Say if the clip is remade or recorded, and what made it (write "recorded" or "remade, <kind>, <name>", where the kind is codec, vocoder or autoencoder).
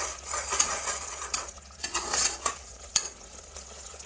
remade, vocoder, Vocos